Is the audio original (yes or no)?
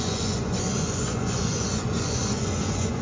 no